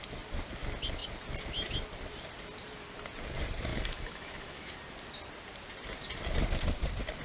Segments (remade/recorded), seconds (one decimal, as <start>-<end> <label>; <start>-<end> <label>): 0.0-3.7 recorded; 3.7-4.7 remade; 4.7-7.2 recorded